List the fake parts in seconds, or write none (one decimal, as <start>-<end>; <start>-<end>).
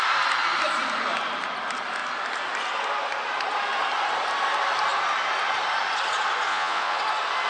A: 6.5-7.0